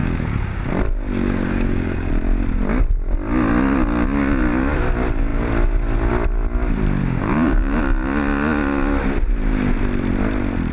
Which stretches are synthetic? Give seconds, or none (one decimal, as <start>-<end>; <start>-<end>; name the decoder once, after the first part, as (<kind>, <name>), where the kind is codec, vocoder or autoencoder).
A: 0.0-0.7 (codec, DAC); 1.2-2.1; 7.0-7.8